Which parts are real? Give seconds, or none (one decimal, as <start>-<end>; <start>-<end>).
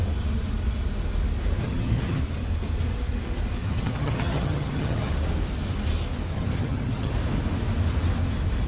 0.0-1.6; 2.2-3.6; 5.1-6.3; 7.1-8.7